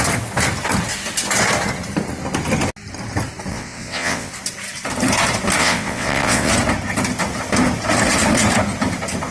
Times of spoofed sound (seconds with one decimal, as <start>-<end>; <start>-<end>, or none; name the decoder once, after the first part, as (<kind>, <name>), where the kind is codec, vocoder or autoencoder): 3.5-4.3 (vocoder, WaveNeXt); 5.6-6.5